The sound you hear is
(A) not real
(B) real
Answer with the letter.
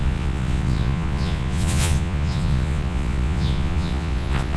A